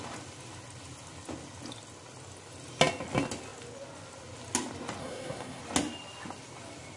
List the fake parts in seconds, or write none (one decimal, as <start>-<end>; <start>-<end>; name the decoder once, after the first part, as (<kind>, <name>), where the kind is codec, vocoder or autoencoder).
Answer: 5.0-5.6 (codec, SNAC)